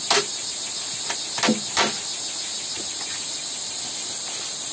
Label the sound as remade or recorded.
recorded